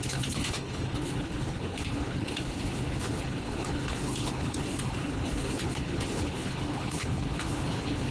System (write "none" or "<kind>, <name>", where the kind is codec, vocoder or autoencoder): codec, HILCodec